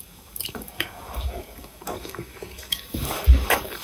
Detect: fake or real fake